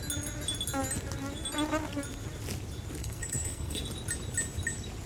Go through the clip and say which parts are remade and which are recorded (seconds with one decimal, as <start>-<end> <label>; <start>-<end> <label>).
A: 0.0-3.0 recorded; 3.0-3.8 remade; 3.8-5.1 recorded